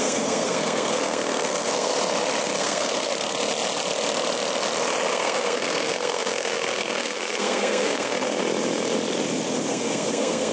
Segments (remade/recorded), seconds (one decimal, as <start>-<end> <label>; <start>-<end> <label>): 0.0-1.9 remade; 1.9-2.6 recorded; 2.6-3.1 remade; 3.1-5.1 recorded; 5.1-8.4 remade; 8.4-9.7 recorded; 9.7-10.5 remade